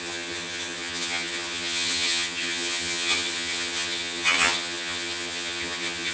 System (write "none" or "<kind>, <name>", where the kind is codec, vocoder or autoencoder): vocoder, HiFi-GAN